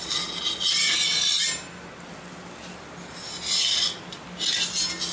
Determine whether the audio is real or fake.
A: real